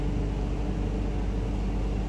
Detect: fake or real real